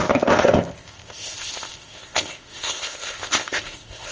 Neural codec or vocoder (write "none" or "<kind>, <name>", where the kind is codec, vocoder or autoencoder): codec, ZipCodec